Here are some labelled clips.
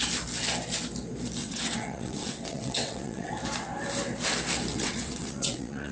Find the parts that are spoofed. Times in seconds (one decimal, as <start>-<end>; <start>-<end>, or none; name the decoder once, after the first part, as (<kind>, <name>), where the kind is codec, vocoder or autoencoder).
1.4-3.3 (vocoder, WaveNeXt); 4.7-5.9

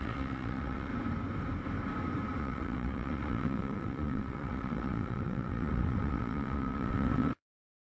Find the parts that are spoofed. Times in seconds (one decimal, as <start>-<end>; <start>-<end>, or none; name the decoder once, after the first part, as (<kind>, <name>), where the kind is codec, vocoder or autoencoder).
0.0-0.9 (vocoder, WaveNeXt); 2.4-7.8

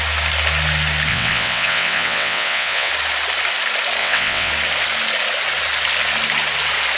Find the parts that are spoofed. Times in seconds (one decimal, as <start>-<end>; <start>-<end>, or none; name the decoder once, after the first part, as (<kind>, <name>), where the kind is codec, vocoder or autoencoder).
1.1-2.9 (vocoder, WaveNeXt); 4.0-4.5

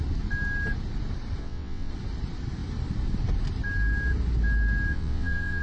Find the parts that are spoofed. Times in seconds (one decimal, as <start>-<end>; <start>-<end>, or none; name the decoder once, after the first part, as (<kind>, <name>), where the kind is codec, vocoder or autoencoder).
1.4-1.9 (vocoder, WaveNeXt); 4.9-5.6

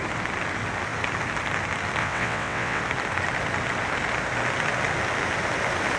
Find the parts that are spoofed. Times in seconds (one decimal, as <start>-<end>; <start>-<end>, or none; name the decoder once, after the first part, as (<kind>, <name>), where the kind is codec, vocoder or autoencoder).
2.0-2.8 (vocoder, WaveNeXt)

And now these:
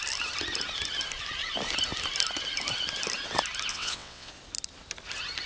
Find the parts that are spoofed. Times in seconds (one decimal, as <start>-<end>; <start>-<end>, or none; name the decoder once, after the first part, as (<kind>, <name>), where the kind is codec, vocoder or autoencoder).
3.7-4.3 (vocoder, WaveNeXt)

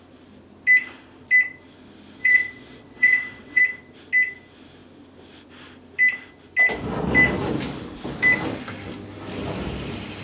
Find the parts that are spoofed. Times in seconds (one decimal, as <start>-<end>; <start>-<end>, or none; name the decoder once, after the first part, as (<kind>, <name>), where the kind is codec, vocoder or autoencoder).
2.2-3.6 (vocoder, WaveNeXt)

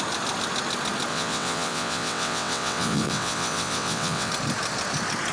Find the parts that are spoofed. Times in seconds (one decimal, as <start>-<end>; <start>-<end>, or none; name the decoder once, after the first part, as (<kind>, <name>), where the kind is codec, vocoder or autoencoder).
1.1-4.3 (vocoder, WaveNeXt)